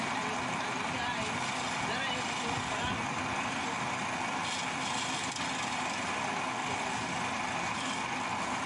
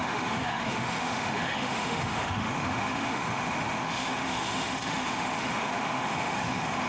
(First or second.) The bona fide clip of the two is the first